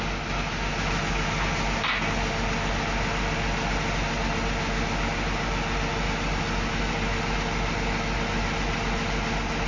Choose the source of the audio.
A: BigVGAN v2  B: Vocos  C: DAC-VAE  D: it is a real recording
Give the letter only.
D